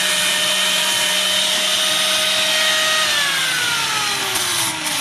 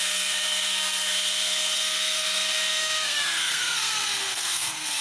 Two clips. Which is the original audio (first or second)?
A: first